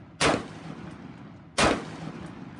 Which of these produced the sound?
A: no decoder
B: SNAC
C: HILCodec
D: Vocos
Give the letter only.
A